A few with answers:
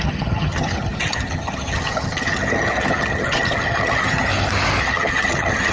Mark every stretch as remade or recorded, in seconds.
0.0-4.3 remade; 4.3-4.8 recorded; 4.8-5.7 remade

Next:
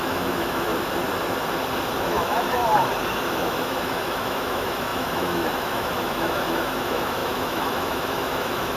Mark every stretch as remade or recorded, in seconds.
0.0-0.7 remade; 0.7-2.0 recorded; 2.0-2.6 remade; 2.6-3.3 recorded; 3.3-8.8 remade

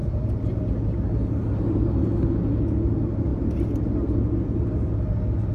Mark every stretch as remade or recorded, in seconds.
0.0-5.5 recorded

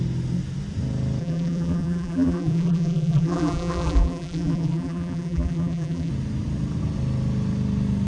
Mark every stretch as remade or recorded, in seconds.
0.0-1.2 recorded; 1.2-6.1 remade; 6.1-8.1 recorded

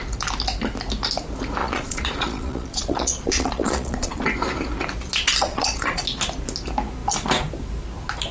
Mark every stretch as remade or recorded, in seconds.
0.0-1.6 recorded; 1.6-4.2 remade; 4.2-5.5 recorded; 5.5-6.0 remade; 6.0-8.3 recorded

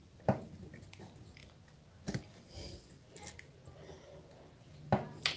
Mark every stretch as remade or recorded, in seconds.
0.0-5.4 recorded

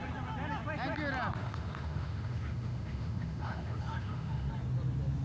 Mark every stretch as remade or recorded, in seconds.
0.0-1.4 recorded; 1.4-4.5 remade; 4.5-5.2 recorded

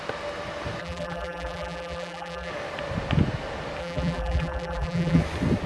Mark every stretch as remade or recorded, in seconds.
0.0-0.8 recorded; 0.8-2.5 remade; 2.5-3.8 recorded; 3.8-5.2 remade; 5.2-5.7 recorded